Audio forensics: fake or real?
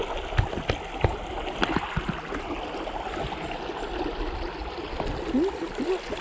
real